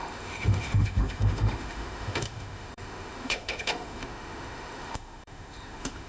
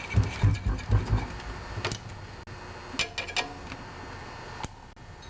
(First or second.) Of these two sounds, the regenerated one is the first